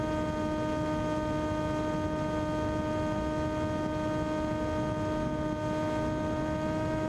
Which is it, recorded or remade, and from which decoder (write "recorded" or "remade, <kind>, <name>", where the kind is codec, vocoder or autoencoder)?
recorded